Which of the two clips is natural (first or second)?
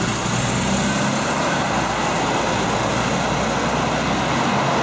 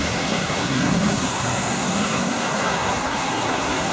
first